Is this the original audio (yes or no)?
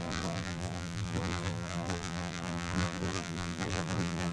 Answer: no